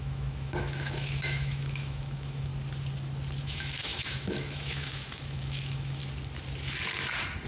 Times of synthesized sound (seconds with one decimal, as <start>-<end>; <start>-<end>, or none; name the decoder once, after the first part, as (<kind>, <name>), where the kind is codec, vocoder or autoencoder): 0.0-2.5 (autoencoder, DAC-VAE); 3.4-6.0